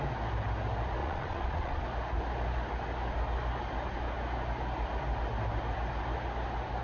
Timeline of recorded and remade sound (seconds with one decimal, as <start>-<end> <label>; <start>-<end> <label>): 0.0-1.0 recorded; 1.0-1.8 remade; 1.8-6.8 recorded